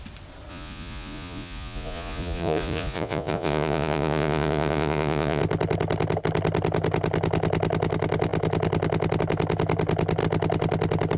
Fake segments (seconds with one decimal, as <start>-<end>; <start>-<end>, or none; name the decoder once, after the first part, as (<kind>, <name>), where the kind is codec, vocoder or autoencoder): 0.5-5.4 (vocoder, Vocos)